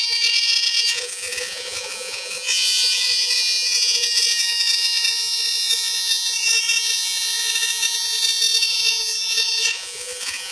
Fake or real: fake